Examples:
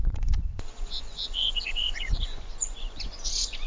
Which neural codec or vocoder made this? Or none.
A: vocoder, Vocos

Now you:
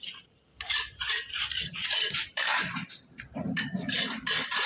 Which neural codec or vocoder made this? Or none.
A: vocoder, BigVGAN v2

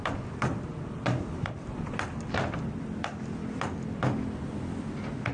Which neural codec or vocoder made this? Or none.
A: vocoder, BigVGAN v2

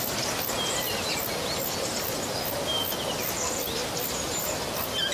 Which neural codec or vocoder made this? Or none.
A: none